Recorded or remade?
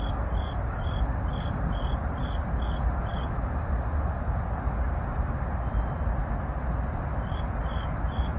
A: recorded